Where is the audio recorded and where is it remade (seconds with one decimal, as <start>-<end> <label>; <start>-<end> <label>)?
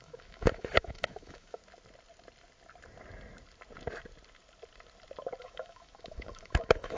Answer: 0.0-1.6 remade; 1.6-5.4 recorded; 5.4-7.0 remade